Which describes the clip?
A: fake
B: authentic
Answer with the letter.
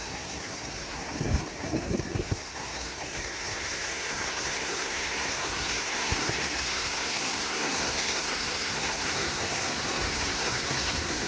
A